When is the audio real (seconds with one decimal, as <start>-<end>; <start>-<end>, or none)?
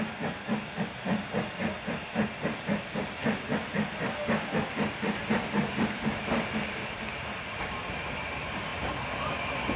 0.0-9.8